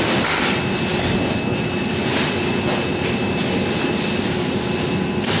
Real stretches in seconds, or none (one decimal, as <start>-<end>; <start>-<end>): 0.0-0.9; 4.1-5.4